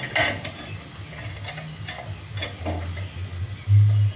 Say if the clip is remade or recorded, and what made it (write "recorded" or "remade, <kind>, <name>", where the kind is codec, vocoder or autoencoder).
recorded